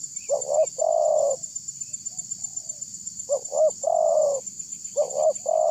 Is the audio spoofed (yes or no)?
no